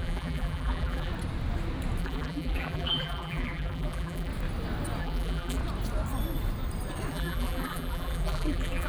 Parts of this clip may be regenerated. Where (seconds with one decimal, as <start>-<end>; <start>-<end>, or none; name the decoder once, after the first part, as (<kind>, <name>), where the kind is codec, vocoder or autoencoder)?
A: 0.0-1.1 (vocoder, BigVGAN v2); 2.0-4.3; 5.0-5.6; 7.1-8.9